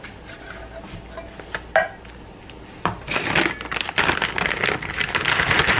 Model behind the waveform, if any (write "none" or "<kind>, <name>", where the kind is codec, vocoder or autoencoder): none